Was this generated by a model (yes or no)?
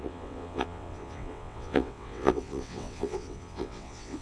yes